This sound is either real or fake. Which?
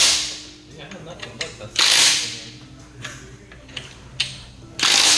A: real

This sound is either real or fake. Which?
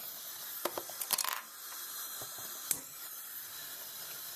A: real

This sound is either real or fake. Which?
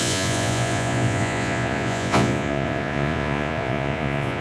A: fake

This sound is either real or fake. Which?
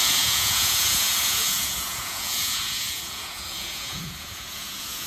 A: fake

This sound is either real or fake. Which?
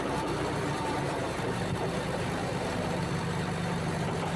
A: fake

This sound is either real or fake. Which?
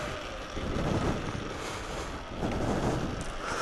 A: real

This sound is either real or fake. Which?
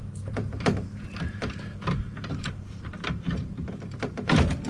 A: fake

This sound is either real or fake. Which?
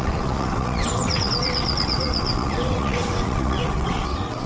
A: fake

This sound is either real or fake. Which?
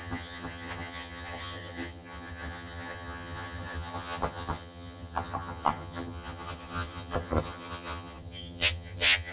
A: fake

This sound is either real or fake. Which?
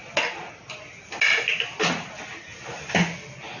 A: real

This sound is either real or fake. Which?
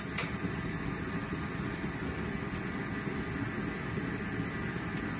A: real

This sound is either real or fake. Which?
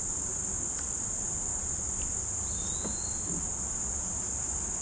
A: real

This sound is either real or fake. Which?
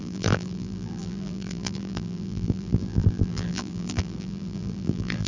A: fake